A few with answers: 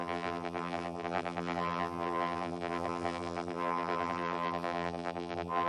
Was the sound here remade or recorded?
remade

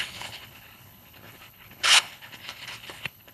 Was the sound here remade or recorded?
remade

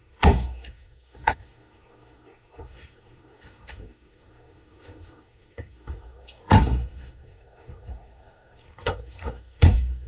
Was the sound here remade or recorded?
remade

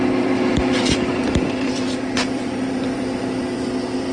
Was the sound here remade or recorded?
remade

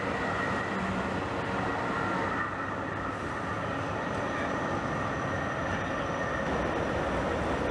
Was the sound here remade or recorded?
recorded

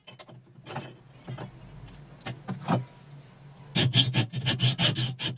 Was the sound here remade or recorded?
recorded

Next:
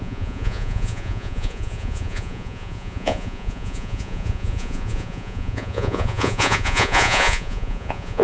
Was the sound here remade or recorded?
remade